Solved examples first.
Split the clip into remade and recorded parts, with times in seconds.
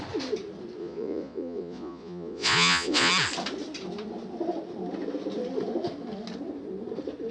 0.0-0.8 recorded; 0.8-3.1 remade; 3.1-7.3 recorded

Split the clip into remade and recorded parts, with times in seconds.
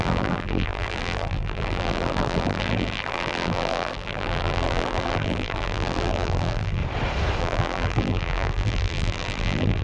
0.0-6.8 remade; 6.8-7.4 recorded; 7.4-9.8 remade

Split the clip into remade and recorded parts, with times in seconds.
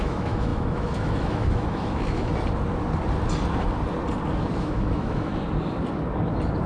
0.0-2.3 remade; 2.3-4.6 recorded; 4.6-5.3 remade; 5.3-6.7 recorded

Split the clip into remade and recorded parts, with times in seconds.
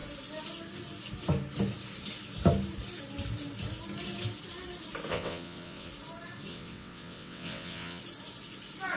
0.0-5.1 recorded; 5.1-5.9 remade; 5.9-6.5 recorded; 6.5-8.0 remade; 8.0-9.0 recorded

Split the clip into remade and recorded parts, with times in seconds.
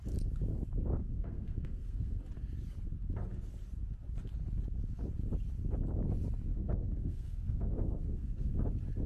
0.0-1.0 recorded; 1.0-2.2 remade; 2.2-6.5 recorded; 6.5-8.5 remade; 8.5-9.1 recorded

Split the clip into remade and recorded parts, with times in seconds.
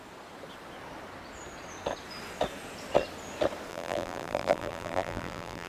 0.0-3.7 recorded; 3.7-5.7 remade